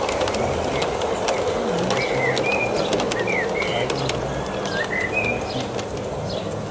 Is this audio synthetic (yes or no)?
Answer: no